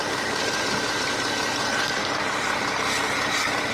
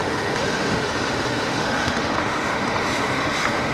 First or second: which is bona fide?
first